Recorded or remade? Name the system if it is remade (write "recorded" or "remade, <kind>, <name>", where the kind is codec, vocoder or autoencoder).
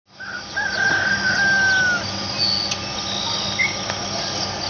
recorded